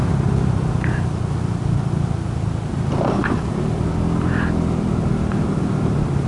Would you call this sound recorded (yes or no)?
yes